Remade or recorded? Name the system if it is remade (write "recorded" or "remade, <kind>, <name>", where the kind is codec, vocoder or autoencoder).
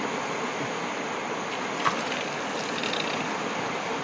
recorded